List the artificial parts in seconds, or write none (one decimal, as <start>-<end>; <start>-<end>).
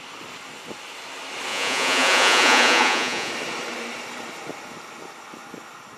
1.5-3.3